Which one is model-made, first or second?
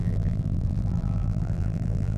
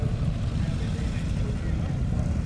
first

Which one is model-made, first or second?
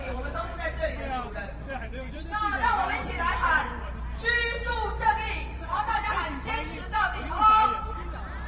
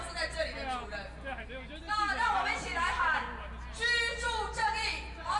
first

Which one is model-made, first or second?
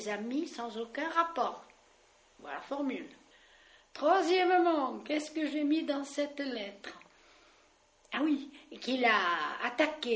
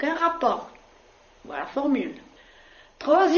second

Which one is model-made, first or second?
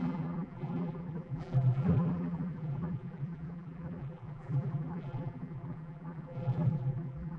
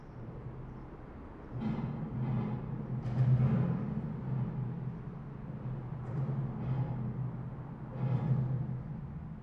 first